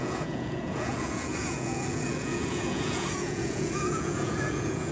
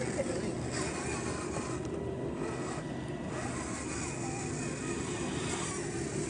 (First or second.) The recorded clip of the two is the second